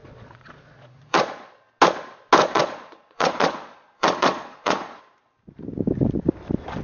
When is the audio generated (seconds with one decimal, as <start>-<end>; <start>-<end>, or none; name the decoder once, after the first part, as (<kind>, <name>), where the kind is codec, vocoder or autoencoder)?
0.0-1.6 (vocoder, Vocos); 2.4-5.0